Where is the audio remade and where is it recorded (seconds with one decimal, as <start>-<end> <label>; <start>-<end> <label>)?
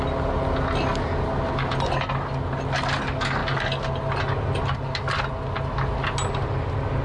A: 0.0-7.0 recorded